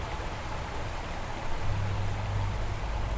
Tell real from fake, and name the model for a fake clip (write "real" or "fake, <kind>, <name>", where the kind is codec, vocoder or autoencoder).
real